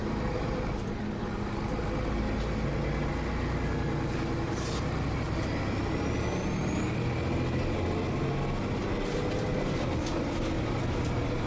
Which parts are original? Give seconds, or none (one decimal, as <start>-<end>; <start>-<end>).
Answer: 0.7-5.8; 6.6-8.8; 9.8-11.5